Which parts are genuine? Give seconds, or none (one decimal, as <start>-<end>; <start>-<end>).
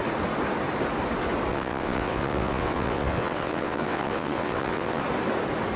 0.0-1.5; 5.0-5.8